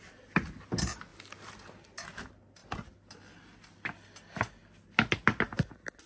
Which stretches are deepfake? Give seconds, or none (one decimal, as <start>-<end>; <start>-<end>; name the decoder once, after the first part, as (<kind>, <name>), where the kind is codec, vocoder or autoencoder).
none